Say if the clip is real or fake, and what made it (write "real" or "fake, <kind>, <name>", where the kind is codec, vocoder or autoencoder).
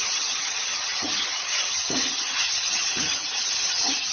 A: fake, vocoder, HiFi-GAN